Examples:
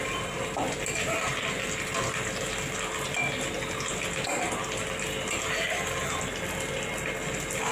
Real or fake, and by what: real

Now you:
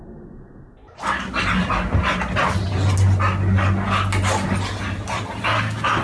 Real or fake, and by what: real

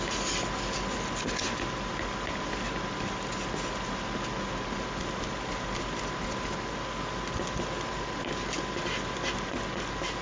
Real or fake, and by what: real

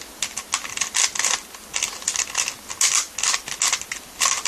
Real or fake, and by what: real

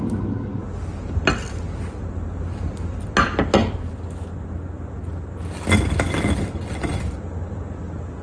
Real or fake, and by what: real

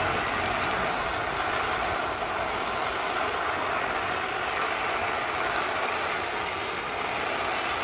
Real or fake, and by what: real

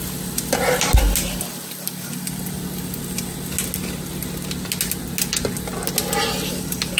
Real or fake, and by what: real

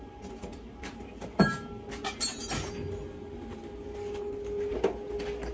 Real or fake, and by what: real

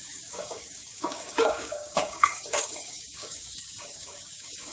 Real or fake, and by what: fake, codec, DAC